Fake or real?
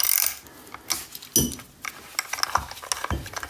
real